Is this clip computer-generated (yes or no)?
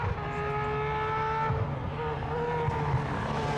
no